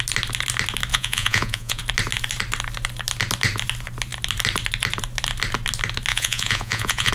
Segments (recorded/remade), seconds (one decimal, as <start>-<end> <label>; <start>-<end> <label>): 0.0-0.9 recorded; 0.9-1.8 remade; 1.8-6.1 recorded; 6.1-7.1 remade